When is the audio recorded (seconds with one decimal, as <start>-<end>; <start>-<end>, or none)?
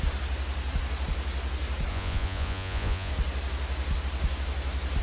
0.0-1.9; 3.1-5.0